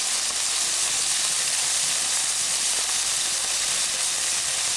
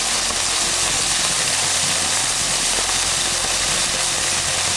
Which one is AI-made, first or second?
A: second